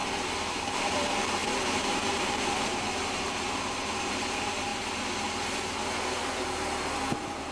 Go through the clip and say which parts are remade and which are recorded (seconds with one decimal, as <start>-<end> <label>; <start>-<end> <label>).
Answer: 0.0-0.6 recorded; 0.6-4.7 remade; 4.7-7.5 recorded